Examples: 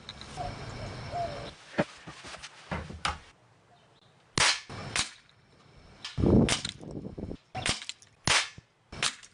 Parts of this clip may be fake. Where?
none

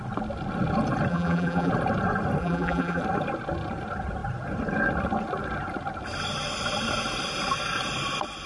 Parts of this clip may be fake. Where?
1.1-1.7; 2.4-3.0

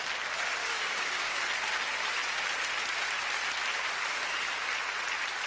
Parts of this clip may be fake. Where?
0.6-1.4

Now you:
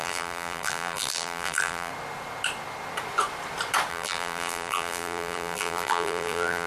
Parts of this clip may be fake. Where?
0.0-1.9; 3.9-6.7

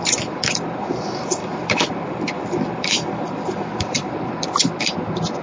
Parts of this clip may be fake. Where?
1.4-4.6

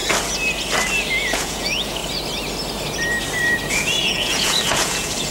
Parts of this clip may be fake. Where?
1.3-2.0; 3.7-5.3

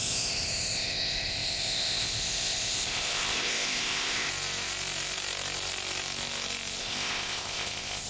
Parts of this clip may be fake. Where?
0.0-4.3; 6.8-8.1

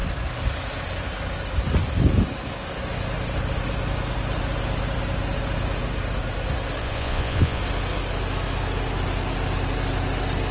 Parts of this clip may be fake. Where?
6.8-7.6